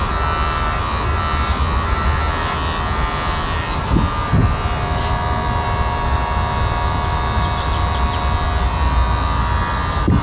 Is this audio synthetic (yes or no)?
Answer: no